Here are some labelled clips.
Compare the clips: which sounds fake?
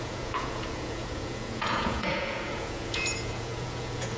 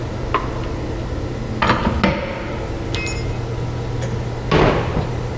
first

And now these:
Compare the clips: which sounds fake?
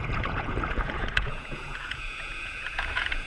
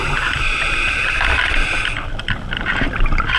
first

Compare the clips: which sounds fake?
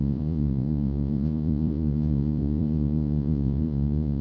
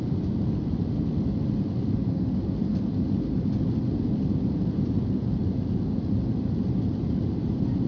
first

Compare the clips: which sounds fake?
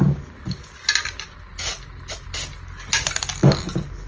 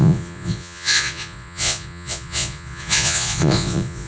second